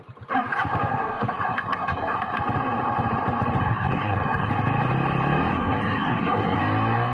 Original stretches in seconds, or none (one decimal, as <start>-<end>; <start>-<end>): 0.0-0.9; 2.4-3.6; 4.5-5.5; 6.6-7.1